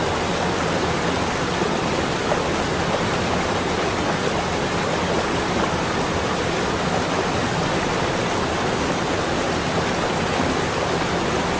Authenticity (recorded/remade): recorded